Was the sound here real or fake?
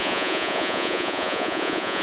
fake